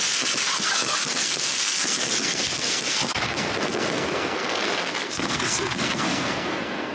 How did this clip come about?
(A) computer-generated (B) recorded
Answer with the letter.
A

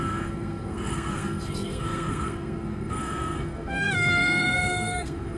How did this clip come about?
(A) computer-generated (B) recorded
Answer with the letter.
A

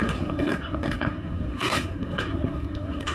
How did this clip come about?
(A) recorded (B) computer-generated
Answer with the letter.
B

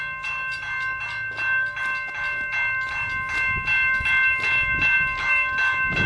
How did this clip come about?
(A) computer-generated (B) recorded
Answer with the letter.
B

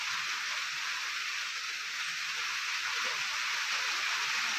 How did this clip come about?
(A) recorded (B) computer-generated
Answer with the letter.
A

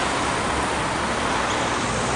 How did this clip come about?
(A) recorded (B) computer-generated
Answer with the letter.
A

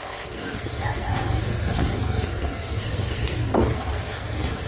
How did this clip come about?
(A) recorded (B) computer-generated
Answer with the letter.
B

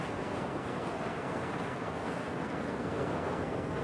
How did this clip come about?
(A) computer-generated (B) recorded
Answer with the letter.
A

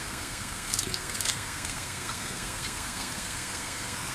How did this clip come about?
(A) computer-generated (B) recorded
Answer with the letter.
A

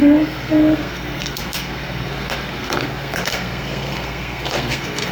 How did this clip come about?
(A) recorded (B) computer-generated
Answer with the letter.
B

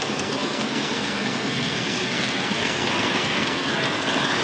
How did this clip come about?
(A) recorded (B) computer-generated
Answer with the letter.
B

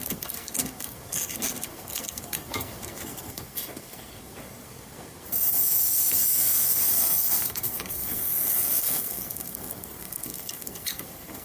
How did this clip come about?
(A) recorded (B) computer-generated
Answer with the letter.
B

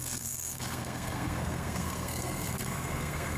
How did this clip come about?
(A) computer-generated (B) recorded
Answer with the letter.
A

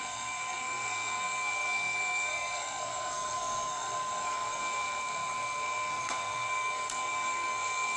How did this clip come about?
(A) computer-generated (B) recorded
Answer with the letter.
A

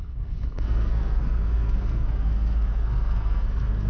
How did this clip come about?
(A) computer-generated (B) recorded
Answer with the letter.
A